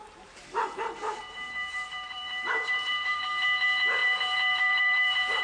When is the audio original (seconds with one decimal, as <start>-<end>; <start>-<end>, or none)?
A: 3.2-4.0